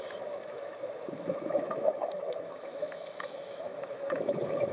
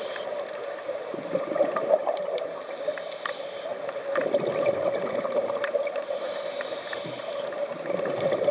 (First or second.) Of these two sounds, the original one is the second